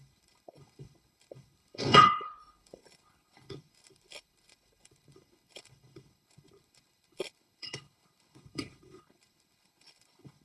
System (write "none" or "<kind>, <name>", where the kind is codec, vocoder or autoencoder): codec, HILCodec